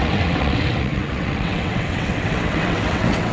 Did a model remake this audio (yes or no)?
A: yes